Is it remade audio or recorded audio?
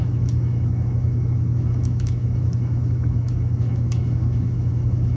remade